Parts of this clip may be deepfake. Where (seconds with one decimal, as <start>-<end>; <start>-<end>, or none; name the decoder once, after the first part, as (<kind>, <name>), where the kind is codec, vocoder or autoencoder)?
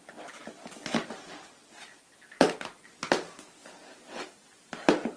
none